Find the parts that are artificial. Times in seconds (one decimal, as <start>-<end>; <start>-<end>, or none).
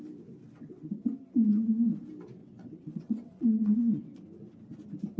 0.4-0.9; 2.4-4.2